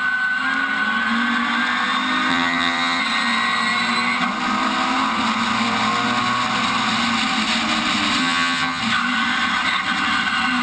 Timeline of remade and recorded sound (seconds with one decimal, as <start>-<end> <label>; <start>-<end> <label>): 0.0-2.3 recorded; 2.3-3.0 remade; 3.0-8.2 recorded; 8.2-8.8 remade; 8.8-10.6 recorded